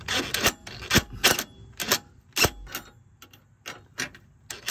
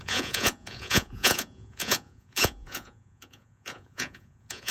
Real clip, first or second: first